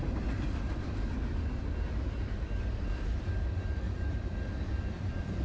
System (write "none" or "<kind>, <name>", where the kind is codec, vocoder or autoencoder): vocoder, BigVGAN v2